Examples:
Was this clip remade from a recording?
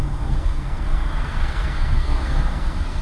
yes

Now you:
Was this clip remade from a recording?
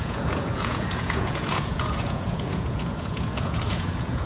yes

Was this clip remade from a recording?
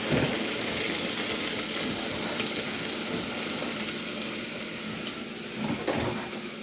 no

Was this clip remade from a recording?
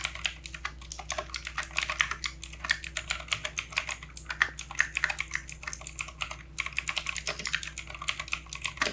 no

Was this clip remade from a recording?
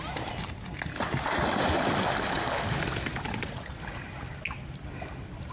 no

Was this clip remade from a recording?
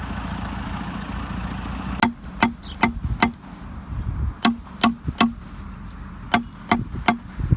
no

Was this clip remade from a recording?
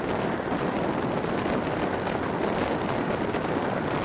no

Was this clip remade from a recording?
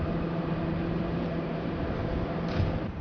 yes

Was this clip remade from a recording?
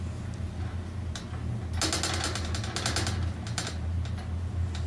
no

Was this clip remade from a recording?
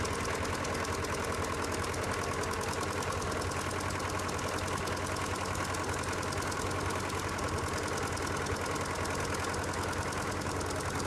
no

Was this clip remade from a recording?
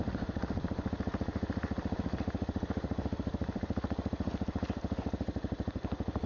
yes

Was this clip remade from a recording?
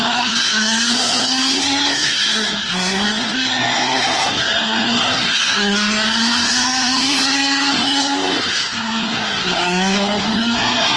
yes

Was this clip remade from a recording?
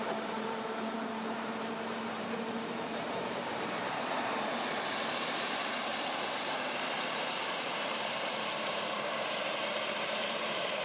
yes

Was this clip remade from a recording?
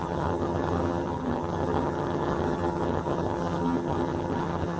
yes